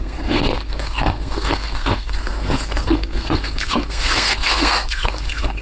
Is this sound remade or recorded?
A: remade